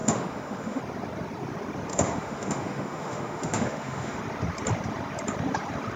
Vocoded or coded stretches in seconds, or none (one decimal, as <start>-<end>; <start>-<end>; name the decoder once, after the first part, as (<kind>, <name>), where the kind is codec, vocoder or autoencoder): 0.0-0.8 (autoencoder, DAC-VAE); 1.9-4.2